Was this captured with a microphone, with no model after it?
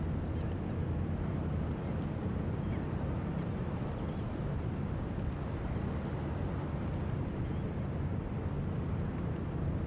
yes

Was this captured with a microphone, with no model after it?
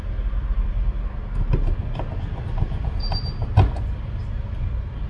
yes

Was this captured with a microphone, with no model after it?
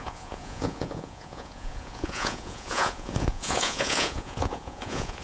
no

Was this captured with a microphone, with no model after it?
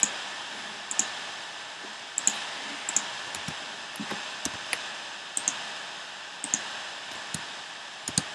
yes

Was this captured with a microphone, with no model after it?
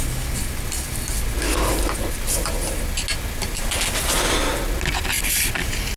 yes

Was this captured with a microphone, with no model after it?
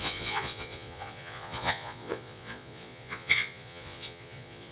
no